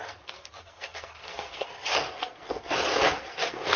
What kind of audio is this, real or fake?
fake